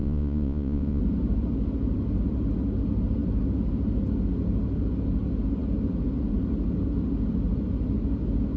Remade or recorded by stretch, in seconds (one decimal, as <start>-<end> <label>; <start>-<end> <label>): 0.0-1.0 remade; 1.0-8.6 recorded